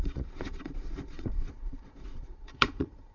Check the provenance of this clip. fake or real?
fake